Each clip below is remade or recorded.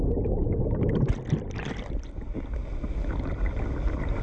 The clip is recorded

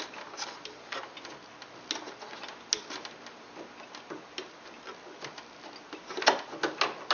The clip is recorded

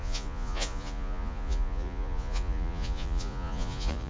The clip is remade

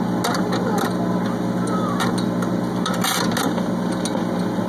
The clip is recorded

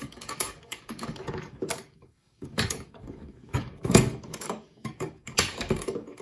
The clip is remade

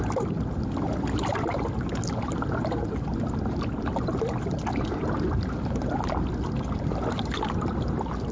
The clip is recorded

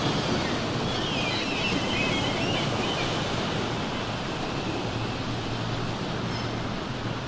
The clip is recorded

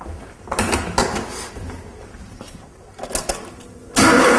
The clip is recorded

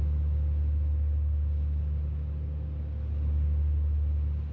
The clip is recorded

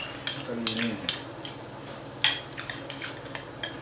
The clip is recorded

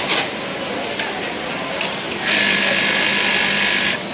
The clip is recorded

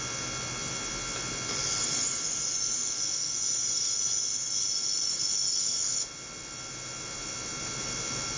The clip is recorded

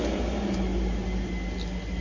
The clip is recorded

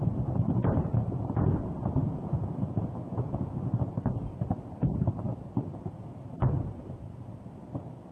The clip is recorded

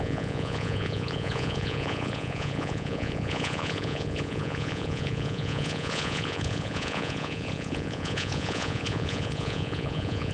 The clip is remade